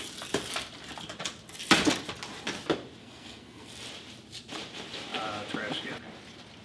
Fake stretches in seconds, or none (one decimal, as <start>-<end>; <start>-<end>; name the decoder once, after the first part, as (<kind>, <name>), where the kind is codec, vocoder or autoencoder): 3.0-3.7 (codec, SNAC)